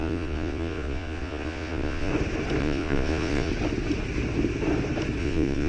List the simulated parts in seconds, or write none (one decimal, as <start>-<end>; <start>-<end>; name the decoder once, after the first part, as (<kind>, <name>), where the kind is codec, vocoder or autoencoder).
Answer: 0.0-2.1 (vocoder, Vocos); 2.6-3.5; 5.2-5.7